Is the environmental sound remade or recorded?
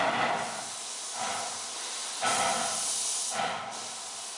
recorded